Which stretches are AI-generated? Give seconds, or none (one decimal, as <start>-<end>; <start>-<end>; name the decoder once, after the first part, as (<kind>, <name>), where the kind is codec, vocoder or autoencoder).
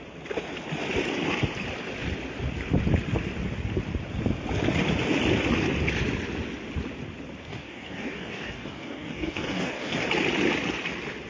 7.5-9.9 (codec, DAC)